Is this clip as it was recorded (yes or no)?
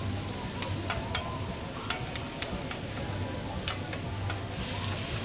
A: yes